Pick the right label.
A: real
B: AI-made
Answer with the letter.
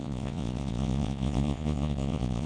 B